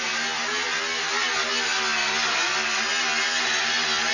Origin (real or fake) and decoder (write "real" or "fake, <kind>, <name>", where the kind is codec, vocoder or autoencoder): real